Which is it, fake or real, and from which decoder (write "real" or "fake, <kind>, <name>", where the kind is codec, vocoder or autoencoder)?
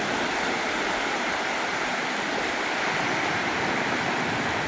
real